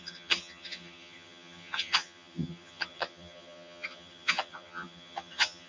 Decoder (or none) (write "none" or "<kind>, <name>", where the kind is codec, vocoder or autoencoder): vocoder, HiFi-GAN